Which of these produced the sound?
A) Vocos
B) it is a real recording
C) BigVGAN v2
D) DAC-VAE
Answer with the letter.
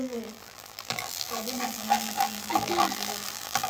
C